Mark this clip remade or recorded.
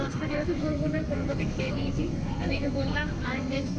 remade